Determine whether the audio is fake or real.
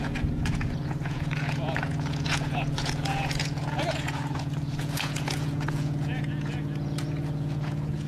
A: fake